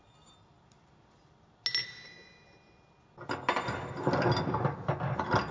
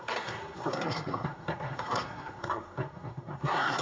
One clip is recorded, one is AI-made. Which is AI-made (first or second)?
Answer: second